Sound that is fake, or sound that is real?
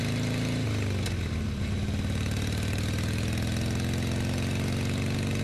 real